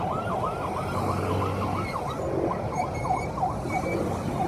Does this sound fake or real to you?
real